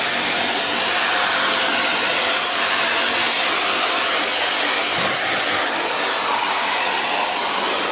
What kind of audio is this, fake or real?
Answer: real